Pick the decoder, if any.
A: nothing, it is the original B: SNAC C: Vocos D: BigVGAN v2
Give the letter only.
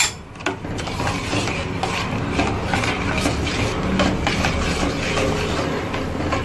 A